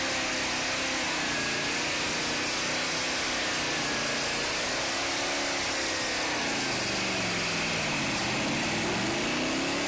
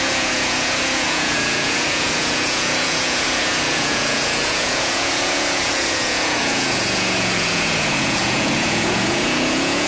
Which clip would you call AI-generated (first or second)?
second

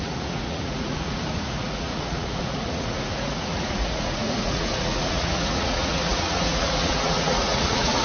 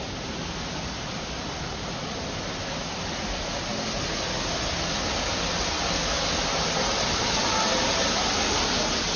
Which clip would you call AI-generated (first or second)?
first